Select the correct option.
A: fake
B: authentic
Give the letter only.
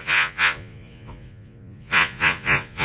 A